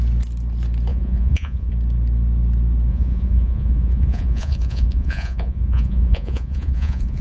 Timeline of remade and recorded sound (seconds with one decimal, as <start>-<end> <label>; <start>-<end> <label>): 0.0-0.9 recorded; 0.9-1.7 remade; 1.7-2.9 recorded; 2.9-7.2 remade